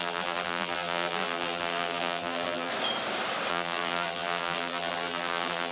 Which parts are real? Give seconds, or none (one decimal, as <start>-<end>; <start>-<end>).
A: 2.7-3.5

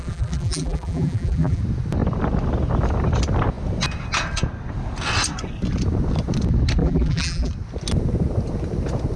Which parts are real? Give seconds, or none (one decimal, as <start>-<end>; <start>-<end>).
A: 1.6-6.8; 7.5-9.2

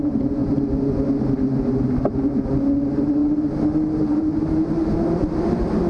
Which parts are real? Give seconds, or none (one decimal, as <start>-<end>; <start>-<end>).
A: 0.0-5.9

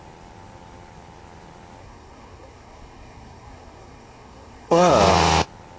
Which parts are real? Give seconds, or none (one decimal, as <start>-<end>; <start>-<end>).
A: 0.0-1.8; 4.9-5.8

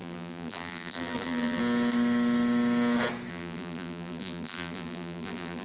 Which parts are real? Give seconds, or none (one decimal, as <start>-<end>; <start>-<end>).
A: 1.6-3.3

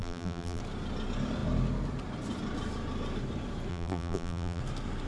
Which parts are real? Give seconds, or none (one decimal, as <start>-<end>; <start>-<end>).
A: 0.6-3.7; 4.6-5.1